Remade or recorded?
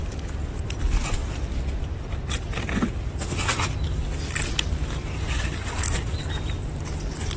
recorded